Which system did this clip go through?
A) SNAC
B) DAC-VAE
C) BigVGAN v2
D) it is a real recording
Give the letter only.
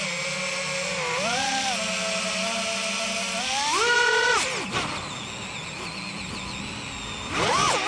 D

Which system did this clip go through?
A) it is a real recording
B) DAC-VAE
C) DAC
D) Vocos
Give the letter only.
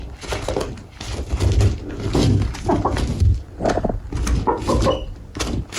A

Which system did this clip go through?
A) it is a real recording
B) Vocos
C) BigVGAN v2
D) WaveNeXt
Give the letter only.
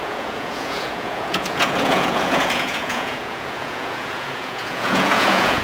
B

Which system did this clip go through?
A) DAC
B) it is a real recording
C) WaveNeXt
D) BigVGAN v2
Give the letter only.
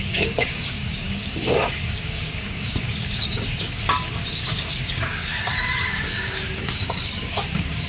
A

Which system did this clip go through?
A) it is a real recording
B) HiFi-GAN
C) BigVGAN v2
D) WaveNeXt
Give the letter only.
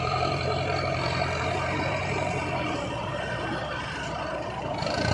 C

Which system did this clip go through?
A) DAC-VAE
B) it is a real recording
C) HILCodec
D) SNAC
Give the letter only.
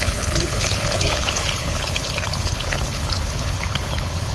C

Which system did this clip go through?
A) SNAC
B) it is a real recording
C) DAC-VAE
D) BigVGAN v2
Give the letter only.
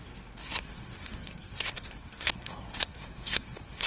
A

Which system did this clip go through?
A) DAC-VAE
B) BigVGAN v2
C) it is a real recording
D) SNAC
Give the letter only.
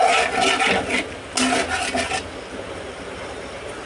C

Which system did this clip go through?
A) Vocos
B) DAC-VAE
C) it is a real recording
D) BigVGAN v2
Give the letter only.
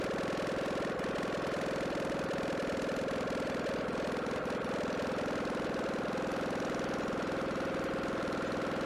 C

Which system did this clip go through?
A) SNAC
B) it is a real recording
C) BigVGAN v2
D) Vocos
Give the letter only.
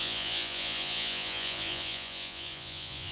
D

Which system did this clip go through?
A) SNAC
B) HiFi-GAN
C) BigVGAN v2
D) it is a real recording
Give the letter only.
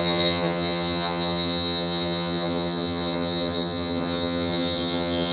B